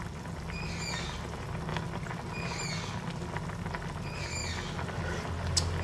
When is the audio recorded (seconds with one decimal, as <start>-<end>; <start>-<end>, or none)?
0.0-5.8